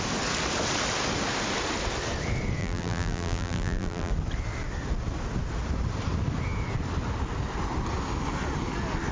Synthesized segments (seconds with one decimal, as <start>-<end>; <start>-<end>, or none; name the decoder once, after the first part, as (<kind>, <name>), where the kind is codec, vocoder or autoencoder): 2.6-4.1 (vocoder, BigVGAN v2)